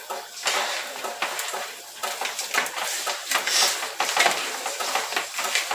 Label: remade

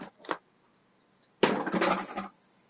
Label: recorded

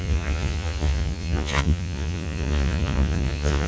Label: remade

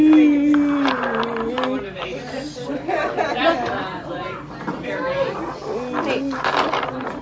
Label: recorded